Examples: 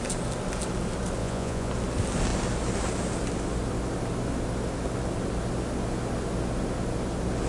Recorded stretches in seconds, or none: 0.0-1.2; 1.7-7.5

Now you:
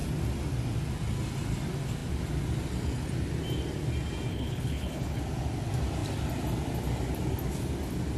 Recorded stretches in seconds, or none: 0.0-4.3; 5.2-8.2

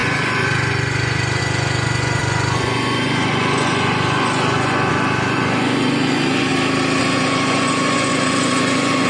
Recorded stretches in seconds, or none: 6.5-7.0

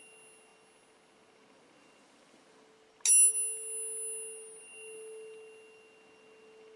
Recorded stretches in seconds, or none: 0.0-6.8

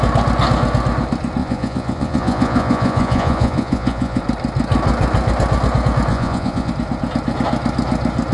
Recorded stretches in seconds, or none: 0.0-1.4; 4.2-6.1; 6.7-8.3

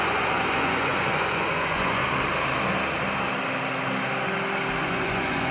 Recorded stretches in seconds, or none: 2.0-4.8

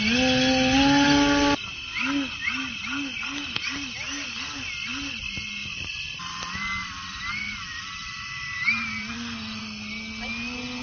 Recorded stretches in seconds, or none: 0.0-4.9; 9.6-10.8